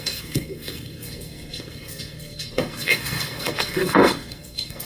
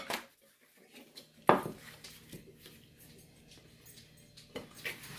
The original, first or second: second